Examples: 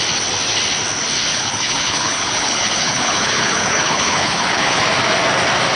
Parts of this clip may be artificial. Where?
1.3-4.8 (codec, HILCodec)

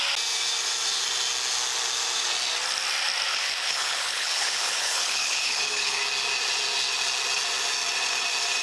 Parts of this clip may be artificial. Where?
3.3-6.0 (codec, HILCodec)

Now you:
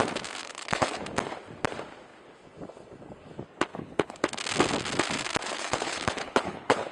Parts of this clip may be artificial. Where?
0.4-1.0 (codec, HILCodec); 3.7-4.2; 5.5-6.9

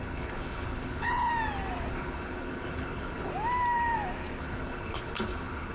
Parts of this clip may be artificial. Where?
0.0-1.3 (codec, HILCodec); 1.9-3.3; 4.4-5.7